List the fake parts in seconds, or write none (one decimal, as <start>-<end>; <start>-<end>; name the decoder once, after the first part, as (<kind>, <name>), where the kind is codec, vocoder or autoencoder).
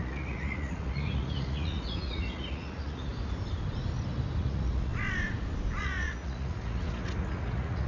0.0-3.1 (vocoder, Vocos); 4.4-4.9; 5.8-7.9